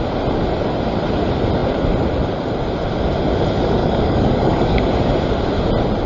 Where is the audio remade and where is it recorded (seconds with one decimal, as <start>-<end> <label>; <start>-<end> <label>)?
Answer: 0.0-3.8 recorded; 3.8-4.8 remade; 4.8-6.1 recorded